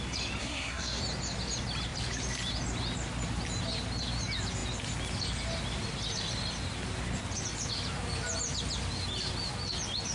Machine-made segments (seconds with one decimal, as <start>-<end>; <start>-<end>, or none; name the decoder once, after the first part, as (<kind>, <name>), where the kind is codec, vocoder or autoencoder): 0.4-1.0 (codec, SNAC)